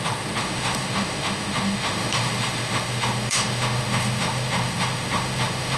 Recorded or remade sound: remade